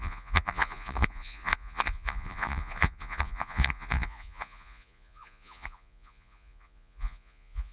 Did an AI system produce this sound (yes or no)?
yes